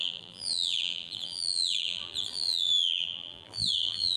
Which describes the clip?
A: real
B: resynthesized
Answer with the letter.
B